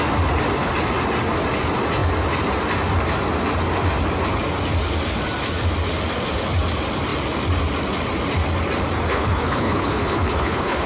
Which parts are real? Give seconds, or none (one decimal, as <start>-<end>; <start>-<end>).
0.0-9.1